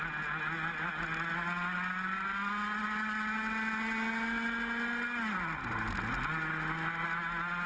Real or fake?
real